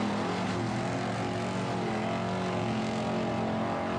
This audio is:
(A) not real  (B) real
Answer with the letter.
B